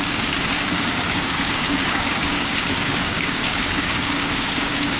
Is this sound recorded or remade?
remade